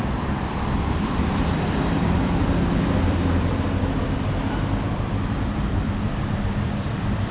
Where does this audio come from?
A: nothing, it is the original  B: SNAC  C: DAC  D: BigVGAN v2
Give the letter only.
D